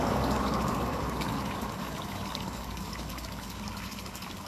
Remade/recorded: remade